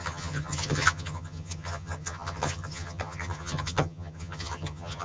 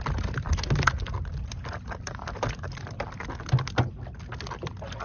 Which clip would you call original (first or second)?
second